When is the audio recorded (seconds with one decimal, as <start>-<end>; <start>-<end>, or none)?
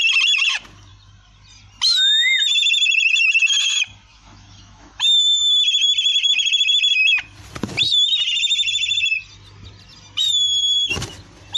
0.0-4.1; 5.4-11.6